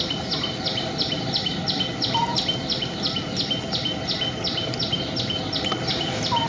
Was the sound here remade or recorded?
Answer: recorded